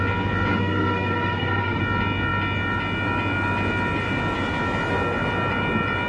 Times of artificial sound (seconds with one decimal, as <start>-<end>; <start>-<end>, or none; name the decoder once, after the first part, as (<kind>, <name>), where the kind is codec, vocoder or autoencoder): 0.5-1.8 (codec, SNAC)